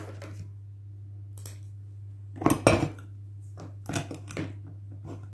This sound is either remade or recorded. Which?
recorded